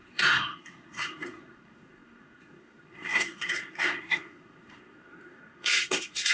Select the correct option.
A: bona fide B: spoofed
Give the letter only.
B